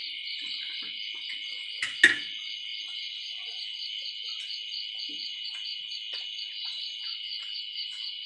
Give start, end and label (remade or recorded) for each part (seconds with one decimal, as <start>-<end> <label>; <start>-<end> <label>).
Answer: 0.0-0.9 remade; 0.9-8.3 recorded